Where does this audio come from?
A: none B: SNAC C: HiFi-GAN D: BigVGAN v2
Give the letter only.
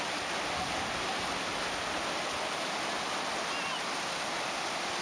A